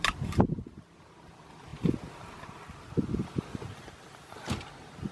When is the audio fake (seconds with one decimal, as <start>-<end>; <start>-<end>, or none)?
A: none